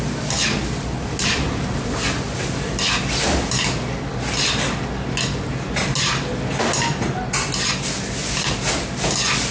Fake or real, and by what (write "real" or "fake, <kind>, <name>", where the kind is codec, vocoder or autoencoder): real